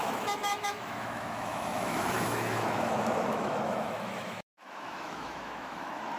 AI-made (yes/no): yes